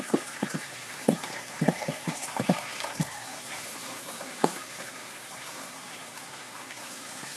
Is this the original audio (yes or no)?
no